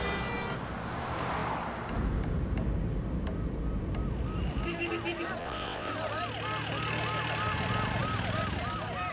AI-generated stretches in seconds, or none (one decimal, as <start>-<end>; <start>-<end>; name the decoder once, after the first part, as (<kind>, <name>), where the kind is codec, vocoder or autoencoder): 5.4-5.9 (vocoder, WaveNeXt)